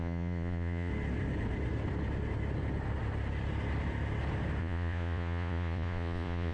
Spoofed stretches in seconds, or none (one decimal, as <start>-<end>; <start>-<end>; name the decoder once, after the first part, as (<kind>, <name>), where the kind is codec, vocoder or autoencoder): 0.0-0.9 (vocoder, Vocos); 4.6-6.5